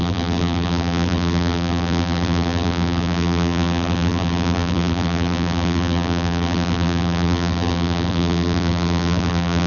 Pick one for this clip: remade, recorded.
remade